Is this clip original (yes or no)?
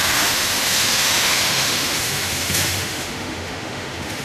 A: no